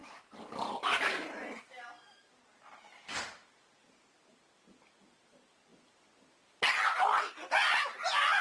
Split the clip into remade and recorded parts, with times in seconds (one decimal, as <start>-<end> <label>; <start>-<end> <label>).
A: 0.0-8.4 remade